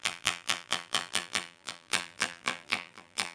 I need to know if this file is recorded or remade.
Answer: remade